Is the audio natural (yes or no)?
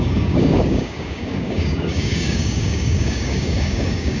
no